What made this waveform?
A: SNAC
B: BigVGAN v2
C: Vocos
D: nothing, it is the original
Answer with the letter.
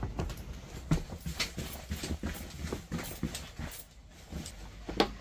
D